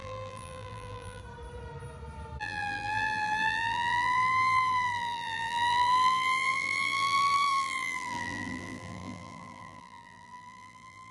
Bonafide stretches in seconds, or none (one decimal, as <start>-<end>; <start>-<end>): 1.2-2.4